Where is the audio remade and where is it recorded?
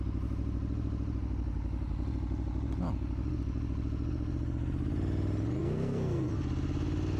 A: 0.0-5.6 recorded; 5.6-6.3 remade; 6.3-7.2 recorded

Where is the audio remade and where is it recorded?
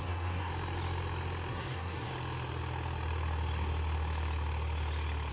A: 0.0-0.5 remade; 0.5-1.5 recorded; 1.5-2.1 remade; 2.1-5.3 recorded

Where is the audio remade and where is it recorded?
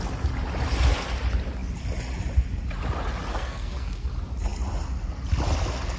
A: 0.0-3.3 recorded; 3.3-4.1 remade; 4.1-6.0 recorded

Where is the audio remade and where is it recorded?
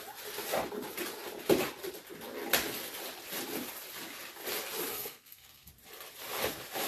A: 0.0-4.9 recorded; 4.9-5.7 remade; 5.7-6.9 recorded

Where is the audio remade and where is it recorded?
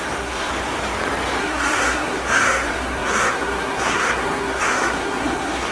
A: 0.0-0.5 remade; 0.5-1.4 recorded; 1.4-5.7 remade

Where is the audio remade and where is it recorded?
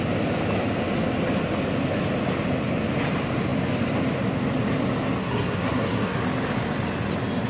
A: 0.0-5.2 recorded; 5.2-6.2 remade; 6.2-7.5 recorded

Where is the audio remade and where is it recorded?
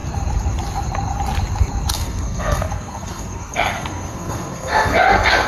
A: 0.0-1.9 recorded; 1.9-5.5 remade